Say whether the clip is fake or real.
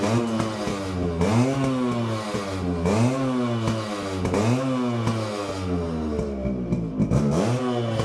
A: real